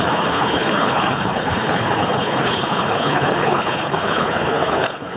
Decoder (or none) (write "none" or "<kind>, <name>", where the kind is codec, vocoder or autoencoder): codec, HILCodec